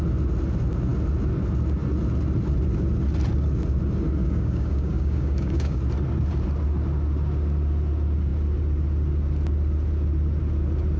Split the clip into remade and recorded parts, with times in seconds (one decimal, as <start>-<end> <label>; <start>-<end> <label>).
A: 0.0-4.2 recorded; 4.2-5.8 remade; 5.8-11.0 recorded